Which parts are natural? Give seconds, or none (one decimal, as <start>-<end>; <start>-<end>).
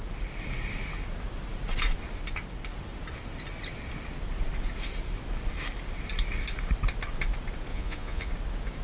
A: 0.0-7.7; 8.3-8.8